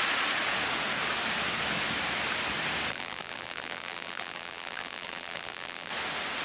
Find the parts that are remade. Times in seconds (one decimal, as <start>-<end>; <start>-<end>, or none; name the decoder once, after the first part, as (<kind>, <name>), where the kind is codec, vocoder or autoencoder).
2.9-5.9 (vocoder, BigVGAN v2)